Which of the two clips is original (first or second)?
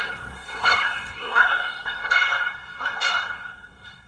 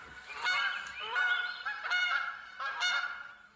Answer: second